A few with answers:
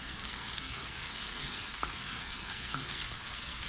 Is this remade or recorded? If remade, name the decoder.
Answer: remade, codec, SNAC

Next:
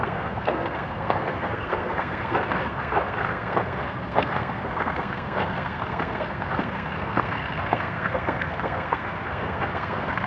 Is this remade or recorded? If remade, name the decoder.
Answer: remade, codec, SNAC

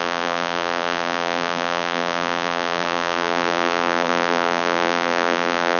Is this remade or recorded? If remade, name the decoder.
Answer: remade, vocoder, BigVGAN v2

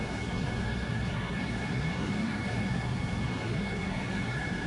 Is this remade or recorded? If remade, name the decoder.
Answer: remade, codec, SNAC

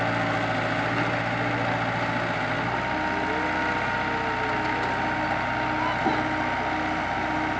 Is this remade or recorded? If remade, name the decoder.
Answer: recorded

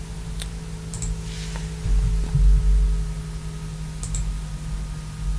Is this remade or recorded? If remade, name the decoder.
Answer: recorded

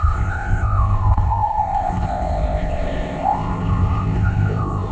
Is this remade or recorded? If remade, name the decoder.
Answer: remade, codec, ZipCodec